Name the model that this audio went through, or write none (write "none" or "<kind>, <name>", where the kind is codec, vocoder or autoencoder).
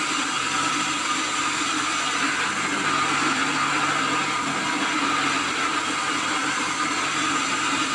none